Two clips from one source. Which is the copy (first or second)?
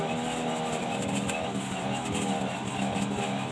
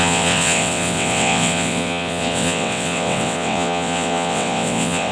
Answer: second